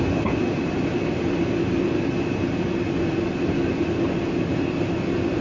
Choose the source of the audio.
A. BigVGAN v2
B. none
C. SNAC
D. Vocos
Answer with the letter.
B